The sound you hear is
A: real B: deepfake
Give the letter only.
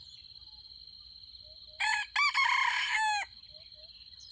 A